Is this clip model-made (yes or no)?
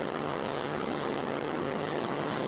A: yes